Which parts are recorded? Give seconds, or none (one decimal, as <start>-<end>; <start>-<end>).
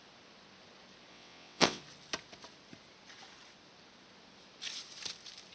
0.0-1.1; 1.8-5.5